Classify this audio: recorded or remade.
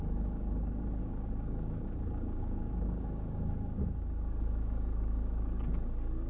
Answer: remade